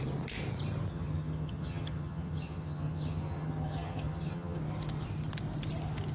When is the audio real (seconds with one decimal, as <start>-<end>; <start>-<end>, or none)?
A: 0.0-0.9; 4.6-6.1